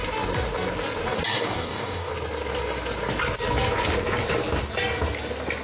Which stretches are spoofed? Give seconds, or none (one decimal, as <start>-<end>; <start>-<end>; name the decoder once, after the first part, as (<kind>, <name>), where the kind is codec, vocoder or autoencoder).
1.4-2.1 (codec, DAC)

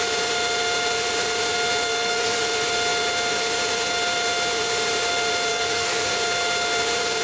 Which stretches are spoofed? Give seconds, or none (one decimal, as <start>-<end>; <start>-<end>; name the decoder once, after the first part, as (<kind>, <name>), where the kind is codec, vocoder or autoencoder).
1.9-2.4 (codec, DAC); 5.5-6.1

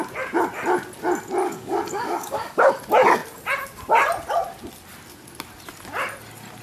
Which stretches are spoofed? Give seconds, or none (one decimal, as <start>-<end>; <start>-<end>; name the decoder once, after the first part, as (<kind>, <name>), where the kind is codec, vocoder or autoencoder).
1.4-2.7 (codec, DAC)

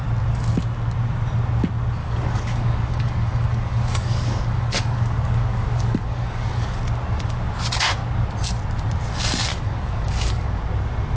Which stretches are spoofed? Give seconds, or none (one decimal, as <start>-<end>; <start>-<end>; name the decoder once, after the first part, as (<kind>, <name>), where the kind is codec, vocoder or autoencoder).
2.0-6.8 (codec, DAC); 9.5-10.6